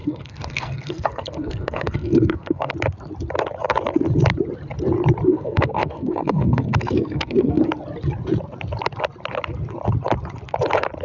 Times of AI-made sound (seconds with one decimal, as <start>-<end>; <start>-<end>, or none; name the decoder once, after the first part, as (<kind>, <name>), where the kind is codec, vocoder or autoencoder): 0.0-2.7 (codec, SNAC); 5.3-7.6